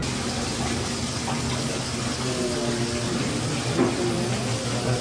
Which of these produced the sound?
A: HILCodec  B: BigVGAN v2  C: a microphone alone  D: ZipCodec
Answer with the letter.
C